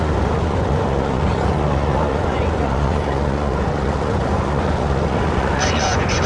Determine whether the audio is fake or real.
fake